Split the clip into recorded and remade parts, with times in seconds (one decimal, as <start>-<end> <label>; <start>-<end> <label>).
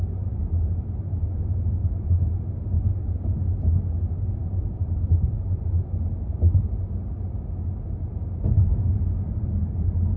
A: 0.0-1.8 recorded; 1.8-2.4 remade; 2.4-10.2 recorded